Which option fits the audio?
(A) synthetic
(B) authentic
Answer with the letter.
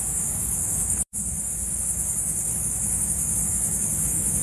A